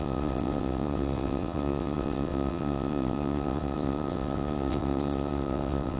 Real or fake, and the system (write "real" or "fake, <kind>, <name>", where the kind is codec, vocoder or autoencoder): fake, vocoder, WaveNeXt